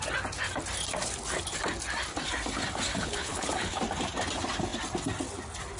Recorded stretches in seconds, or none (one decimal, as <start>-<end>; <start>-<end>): 0.0-2.9; 3.8-5.8